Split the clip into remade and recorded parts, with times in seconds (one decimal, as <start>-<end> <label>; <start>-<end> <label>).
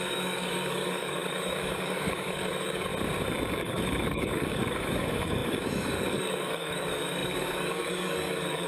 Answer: 0.0-2.9 remade; 2.9-3.5 recorded; 3.5-8.7 remade